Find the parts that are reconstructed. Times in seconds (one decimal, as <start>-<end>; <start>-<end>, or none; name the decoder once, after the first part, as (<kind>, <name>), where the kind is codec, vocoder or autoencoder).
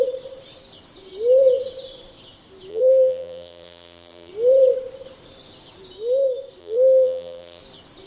2.7-4.3 (vocoder, BigVGAN v2); 6.6-7.6